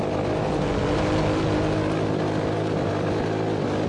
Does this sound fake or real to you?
real